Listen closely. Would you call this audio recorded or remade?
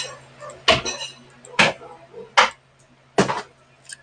recorded